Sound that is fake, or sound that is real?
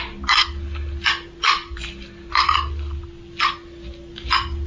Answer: real